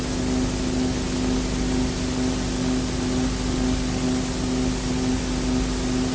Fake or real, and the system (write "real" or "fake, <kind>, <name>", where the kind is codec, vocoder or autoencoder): real